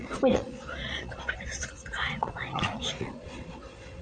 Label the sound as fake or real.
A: fake